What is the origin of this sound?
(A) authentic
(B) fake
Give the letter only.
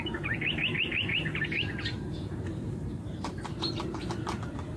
B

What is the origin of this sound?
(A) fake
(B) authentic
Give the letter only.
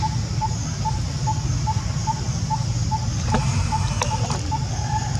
B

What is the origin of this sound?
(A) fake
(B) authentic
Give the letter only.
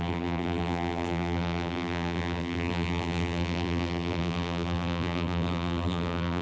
A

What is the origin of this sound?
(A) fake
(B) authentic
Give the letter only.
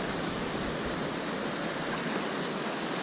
B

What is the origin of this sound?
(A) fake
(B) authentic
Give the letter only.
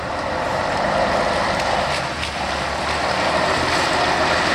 B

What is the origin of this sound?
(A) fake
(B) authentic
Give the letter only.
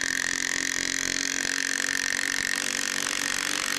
B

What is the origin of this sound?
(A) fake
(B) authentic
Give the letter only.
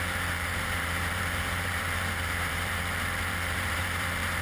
A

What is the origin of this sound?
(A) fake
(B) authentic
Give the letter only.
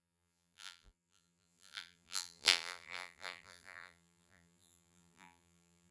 A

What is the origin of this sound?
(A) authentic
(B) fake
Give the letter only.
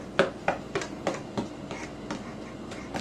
B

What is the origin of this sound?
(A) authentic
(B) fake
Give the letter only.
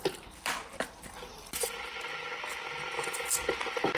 A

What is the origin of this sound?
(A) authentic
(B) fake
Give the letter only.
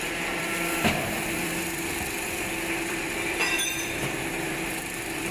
B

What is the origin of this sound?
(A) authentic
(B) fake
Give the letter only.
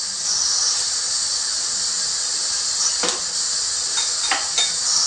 A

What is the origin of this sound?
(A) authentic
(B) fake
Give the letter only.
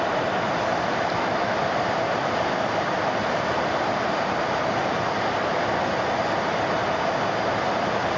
A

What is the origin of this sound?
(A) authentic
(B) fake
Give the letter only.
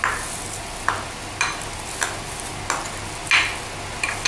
A